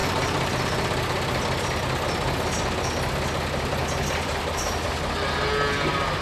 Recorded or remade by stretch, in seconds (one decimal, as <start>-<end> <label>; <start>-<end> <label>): 0.0-1.4 remade; 1.4-3.8 recorded; 3.8-4.7 remade; 4.7-6.2 recorded